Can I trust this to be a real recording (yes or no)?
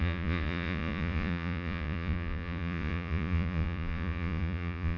no